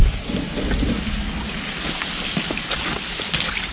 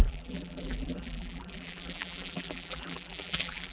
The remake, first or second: second